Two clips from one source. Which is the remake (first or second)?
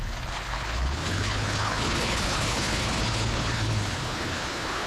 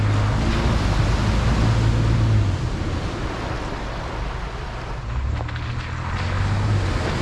first